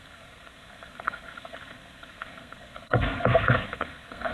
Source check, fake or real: fake